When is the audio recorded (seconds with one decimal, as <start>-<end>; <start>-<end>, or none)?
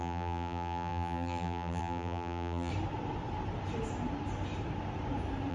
2.7-5.5